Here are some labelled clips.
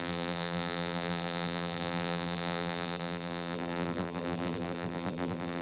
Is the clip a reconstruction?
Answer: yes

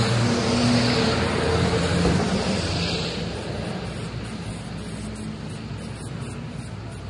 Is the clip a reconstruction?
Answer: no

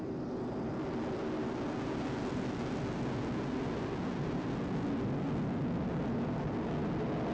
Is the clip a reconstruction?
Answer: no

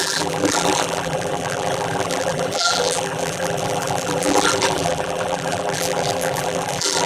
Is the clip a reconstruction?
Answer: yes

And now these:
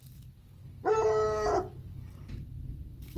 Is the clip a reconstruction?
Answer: no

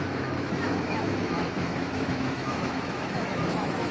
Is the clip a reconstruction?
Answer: yes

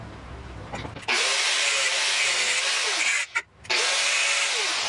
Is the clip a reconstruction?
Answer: no